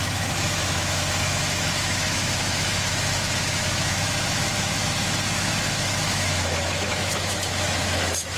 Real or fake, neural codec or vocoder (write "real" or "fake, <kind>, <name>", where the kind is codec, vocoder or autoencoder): fake, autoencoder, DAC-VAE